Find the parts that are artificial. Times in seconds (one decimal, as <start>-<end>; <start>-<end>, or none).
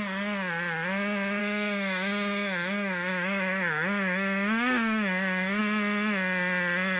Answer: 1.4-5.6